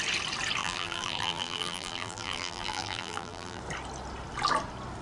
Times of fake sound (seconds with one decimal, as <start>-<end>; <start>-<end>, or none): 0.6-3.6